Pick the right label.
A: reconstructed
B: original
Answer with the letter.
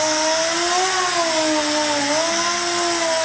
B